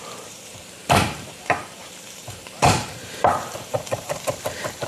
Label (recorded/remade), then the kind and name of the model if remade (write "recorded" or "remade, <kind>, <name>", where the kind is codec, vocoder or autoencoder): remade, vocoder, BigVGAN v2